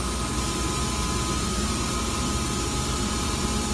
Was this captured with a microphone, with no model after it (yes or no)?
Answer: yes